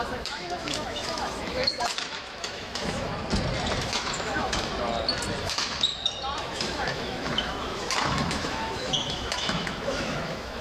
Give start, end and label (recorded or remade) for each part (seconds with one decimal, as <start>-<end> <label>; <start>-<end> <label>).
0.0-3.1 remade; 3.1-3.8 recorded; 3.8-4.7 remade; 4.7-5.4 recorded; 5.4-5.9 remade; 5.9-6.4 recorded; 6.4-10.6 remade